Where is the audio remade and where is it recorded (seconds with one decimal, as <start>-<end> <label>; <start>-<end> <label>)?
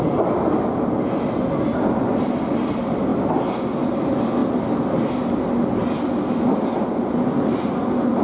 0.0-8.2 recorded